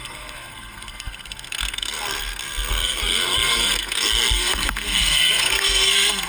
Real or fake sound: fake